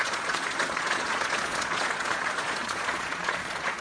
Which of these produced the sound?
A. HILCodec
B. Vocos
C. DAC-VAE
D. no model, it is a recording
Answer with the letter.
B